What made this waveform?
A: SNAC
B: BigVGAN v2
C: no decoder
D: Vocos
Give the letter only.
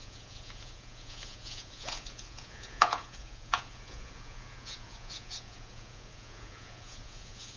D